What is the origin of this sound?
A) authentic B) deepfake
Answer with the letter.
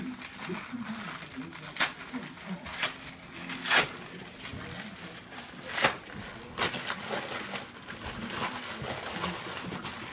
A